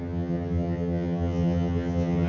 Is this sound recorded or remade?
remade